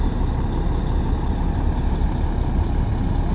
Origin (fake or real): real